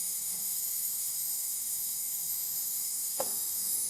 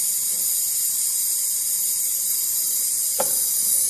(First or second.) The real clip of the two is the second